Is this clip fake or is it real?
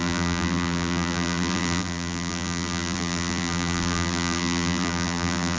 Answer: fake